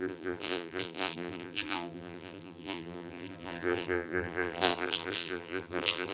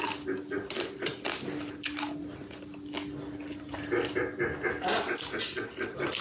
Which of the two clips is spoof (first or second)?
first